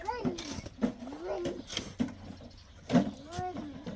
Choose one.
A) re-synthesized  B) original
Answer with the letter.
B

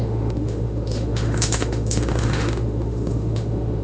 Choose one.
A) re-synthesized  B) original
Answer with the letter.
A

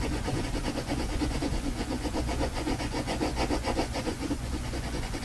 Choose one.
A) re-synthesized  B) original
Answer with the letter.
A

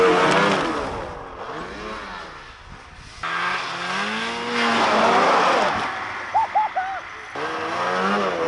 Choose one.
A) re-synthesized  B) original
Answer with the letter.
B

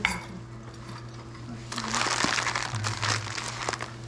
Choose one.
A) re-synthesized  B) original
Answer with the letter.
B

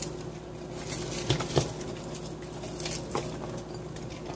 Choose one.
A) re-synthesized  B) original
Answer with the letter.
B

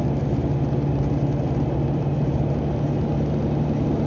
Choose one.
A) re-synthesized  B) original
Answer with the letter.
B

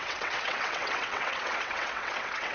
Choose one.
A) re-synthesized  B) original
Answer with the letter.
A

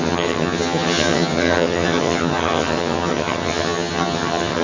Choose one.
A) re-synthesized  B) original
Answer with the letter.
A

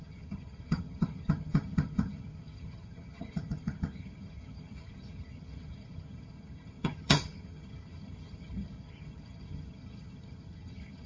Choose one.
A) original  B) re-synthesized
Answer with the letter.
B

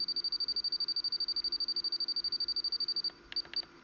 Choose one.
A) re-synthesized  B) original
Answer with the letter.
B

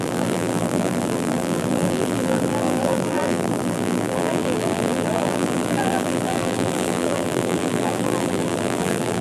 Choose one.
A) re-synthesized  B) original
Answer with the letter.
A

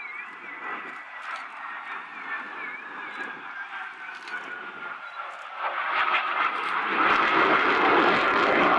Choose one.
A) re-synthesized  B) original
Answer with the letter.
B